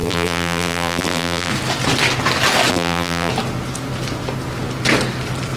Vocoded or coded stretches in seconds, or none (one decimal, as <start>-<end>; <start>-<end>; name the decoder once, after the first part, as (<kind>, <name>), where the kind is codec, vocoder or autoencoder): 0.0-1.5 (vocoder, BigVGAN v2); 2.7-3.3